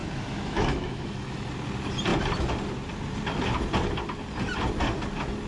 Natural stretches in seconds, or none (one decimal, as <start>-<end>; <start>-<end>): 1.5-5.5